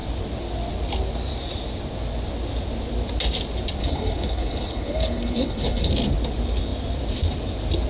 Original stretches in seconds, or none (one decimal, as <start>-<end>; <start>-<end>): 0.0-3.8; 5.9-7.9